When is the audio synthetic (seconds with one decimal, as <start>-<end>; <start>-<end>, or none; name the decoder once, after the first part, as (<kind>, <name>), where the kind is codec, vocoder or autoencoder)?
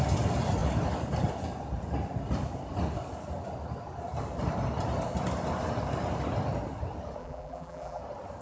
7.2-8.0 (vocoder, BigVGAN v2)